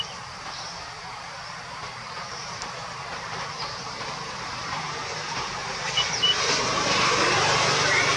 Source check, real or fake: fake